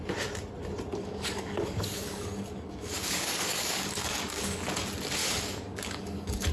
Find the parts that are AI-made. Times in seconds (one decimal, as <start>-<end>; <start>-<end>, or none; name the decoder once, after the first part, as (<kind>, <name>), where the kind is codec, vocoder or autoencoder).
1.0-4.6 (codec, DAC); 5.2-6.5